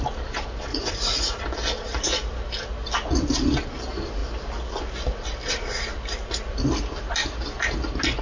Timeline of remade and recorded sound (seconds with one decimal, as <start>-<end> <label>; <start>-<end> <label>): 0.0-0.7 recorded; 0.7-1.4 remade; 1.4-8.2 recorded